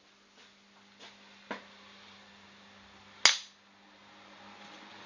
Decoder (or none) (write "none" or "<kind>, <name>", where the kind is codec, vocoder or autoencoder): none